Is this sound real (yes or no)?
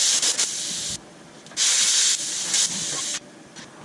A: yes